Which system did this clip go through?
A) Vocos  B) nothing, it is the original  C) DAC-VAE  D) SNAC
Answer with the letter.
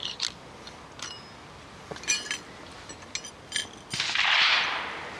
B